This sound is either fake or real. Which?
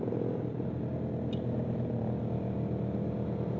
real